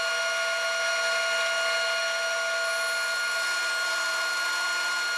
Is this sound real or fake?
real